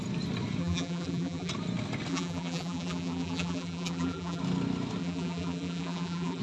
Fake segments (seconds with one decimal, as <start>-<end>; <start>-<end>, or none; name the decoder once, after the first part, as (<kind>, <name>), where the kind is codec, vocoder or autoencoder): 0.6-1.5 (vocoder, BigVGAN v2); 2.1-4.4; 5.0-6.4

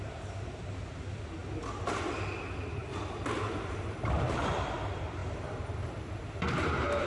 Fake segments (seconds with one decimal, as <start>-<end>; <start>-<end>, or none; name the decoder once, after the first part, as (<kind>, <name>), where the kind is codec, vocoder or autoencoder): 0.0-1.4 (vocoder, BigVGAN v2); 2.4-2.8; 3.4-5.2; 6.2-7.1

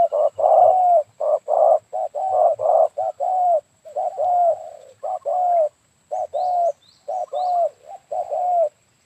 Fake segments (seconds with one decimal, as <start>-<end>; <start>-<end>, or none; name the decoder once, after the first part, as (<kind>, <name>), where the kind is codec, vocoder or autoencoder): 0.0-0.4 (vocoder, BigVGAN v2); 0.9-1.3; 2.7-5.3; 6.8-7.2; 8.2-9.0

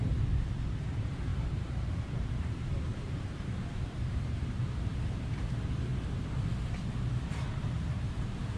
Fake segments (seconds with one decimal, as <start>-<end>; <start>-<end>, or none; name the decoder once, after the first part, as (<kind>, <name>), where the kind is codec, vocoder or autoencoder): 0.0-5.9 (vocoder, BigVGAN v2); 7.3-8.6

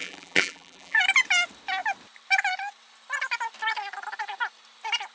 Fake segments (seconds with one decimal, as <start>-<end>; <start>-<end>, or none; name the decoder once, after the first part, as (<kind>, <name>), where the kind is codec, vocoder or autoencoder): 0.0-1.0 (vocoder, BigVGAN v2)

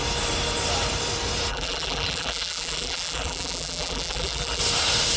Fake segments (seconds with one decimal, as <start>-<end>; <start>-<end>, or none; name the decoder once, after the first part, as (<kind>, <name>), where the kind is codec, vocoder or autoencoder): 1.5-4.6 (vocoder, BigVGAN v2)

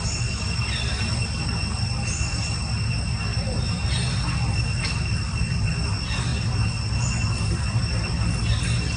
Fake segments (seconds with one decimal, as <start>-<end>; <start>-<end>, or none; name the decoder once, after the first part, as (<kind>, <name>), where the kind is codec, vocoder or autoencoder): 0.0-6.3 (vocoder, BigVGAN v2); 7.5-9.0